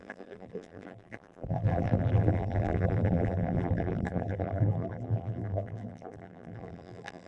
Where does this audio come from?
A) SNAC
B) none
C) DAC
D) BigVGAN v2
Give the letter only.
D